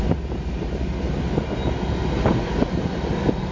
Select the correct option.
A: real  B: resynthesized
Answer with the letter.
A